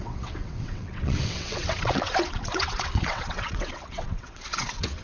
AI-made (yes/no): yes